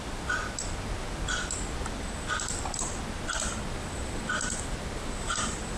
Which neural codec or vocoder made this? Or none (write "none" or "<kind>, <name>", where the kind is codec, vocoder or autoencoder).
none